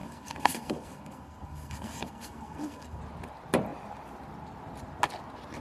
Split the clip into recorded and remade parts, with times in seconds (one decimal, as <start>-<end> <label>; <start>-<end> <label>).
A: 0.0-3.0 remade; 3.0-5.6 recorded